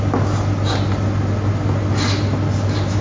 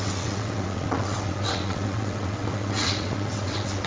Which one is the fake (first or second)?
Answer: second